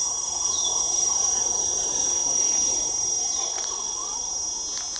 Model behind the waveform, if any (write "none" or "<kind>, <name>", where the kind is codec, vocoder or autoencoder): none